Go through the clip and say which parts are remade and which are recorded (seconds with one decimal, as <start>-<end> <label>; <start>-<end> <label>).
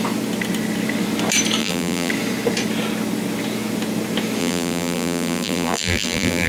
0.0-1.6 recorded; 1.6-2.1 remade; 2.1-4.4 recorded; 4.4-6.5 remade